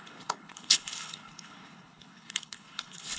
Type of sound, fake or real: fake